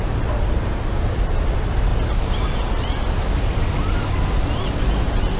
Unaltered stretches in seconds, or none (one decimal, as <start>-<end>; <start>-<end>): 0.0-5.4